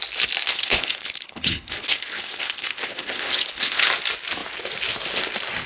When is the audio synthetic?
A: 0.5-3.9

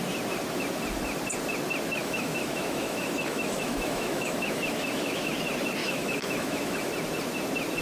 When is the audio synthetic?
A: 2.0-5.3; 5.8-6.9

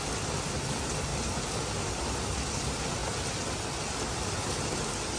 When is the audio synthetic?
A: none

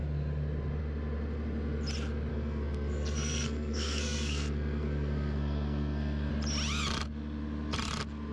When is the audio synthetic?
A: 2.3-6.3